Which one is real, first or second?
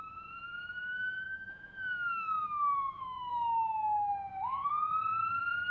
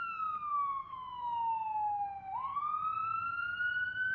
second